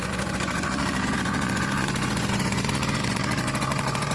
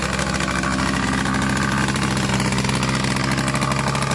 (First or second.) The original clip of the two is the second